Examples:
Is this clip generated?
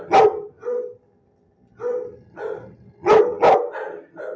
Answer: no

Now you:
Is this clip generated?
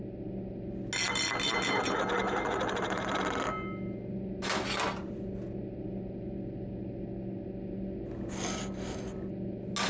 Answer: no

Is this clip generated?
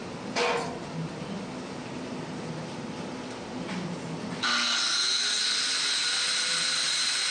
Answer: no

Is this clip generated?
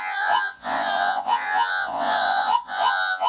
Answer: yes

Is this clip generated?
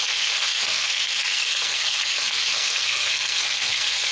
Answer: yes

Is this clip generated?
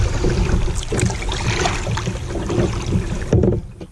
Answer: yes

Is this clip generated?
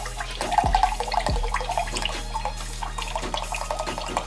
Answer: no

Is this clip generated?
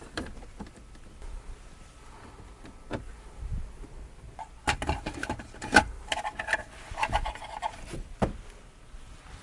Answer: no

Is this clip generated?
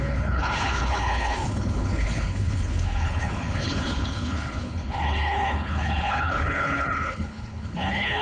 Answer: yes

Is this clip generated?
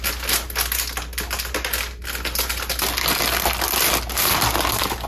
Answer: no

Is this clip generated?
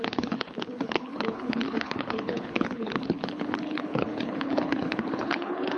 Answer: yes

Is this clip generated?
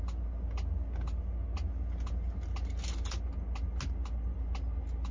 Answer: no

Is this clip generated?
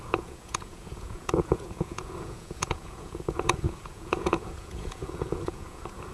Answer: yes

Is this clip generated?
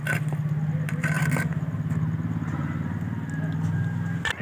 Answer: no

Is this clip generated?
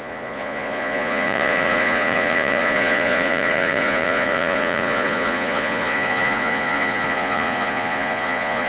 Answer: yes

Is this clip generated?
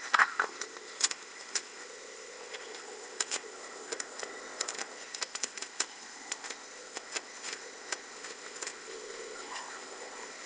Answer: yes